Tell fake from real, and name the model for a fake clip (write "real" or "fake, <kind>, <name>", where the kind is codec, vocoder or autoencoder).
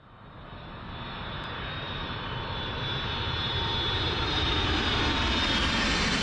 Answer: real